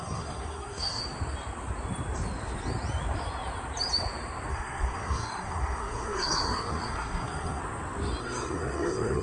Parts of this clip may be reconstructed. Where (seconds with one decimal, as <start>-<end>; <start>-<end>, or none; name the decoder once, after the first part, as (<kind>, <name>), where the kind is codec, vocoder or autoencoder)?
0.0-1.0 (codec, SNAC); 4.5-7.6; 8.2-9.2